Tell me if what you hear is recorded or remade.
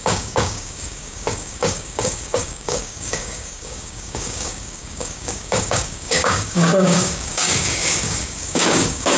remade